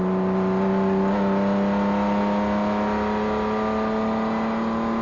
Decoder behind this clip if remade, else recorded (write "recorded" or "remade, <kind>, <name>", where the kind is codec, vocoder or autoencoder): recorded